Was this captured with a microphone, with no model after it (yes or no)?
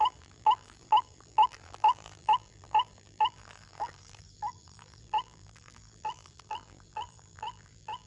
no